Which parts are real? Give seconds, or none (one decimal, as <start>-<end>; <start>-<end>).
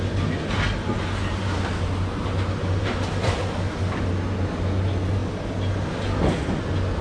0.0-7.0